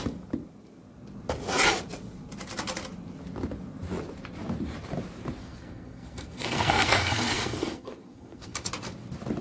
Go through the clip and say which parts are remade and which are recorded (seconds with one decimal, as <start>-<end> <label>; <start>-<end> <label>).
0.0-5.4 recorded; 5.4-8.7 remade; 8.7-9.4 recorded